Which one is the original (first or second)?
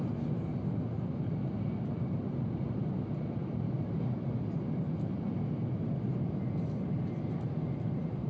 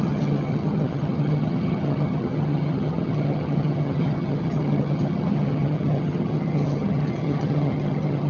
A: first